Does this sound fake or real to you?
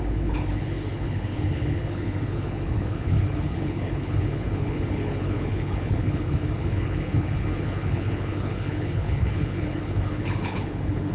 fake